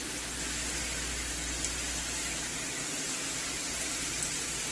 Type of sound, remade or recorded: recorded